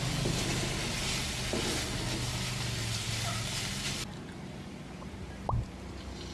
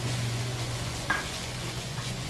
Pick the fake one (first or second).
second